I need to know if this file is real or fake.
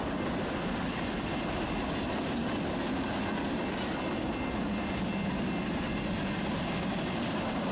real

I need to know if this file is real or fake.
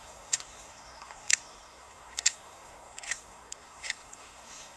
fake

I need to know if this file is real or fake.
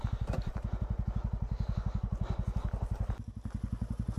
real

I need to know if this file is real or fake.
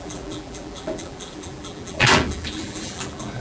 fake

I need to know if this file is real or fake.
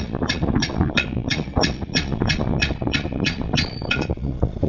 fake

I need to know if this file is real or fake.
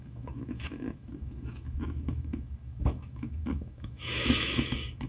fake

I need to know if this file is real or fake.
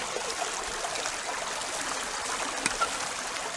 real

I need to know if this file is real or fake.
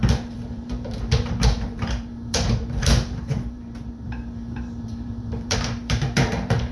fake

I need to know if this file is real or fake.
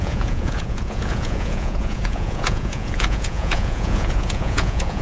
fake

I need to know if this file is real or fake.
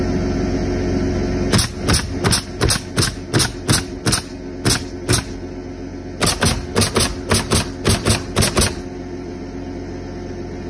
real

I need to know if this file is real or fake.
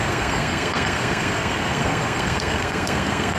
fake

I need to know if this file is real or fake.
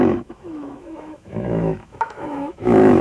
fake